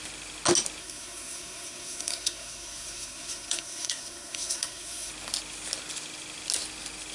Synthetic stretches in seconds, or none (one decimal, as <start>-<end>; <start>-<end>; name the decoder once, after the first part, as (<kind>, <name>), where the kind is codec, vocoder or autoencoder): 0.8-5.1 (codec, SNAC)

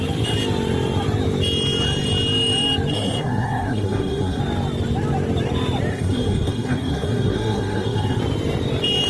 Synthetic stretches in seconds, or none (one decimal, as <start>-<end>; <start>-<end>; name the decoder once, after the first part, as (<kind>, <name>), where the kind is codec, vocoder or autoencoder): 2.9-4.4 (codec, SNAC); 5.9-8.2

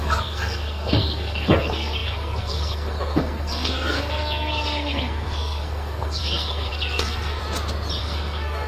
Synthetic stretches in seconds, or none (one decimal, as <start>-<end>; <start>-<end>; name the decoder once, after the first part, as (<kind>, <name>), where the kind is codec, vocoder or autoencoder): 0.0-7.4 (codec, SNAC); 8.0-8.7